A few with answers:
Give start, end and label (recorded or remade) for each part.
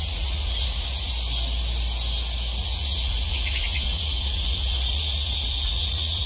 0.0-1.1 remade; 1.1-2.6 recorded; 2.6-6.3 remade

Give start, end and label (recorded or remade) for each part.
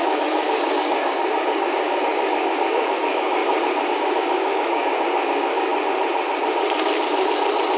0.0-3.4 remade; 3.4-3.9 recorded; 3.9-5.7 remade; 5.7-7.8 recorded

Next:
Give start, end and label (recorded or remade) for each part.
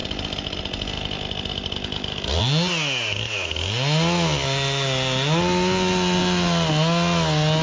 0.0-7.6 recorded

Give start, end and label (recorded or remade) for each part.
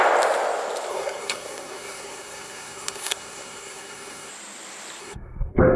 0.0-0.9 recorded; 0.9-4.3 remade; 4.3-5.0 recorded; 5.0-5.8 remade